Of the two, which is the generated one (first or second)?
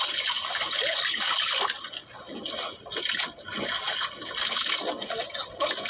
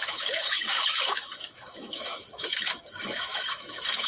second